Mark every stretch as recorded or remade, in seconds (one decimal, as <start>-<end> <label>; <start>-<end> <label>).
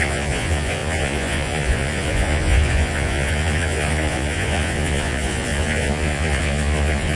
0.0-7.1 remade